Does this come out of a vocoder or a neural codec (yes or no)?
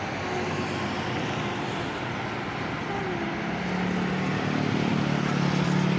no